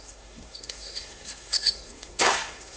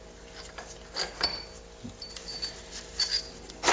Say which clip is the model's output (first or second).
first